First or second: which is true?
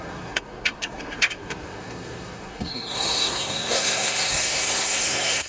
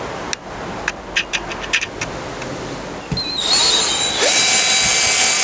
second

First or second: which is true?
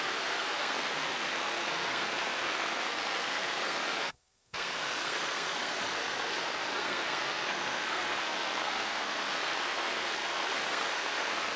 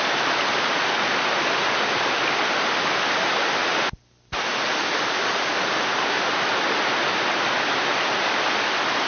second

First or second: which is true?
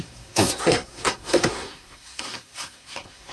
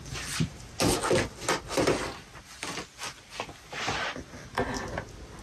second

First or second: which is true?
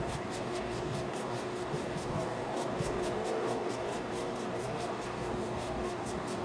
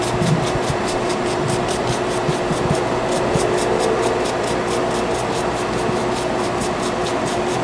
second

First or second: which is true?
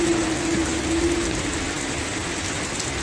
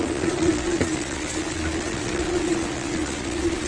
first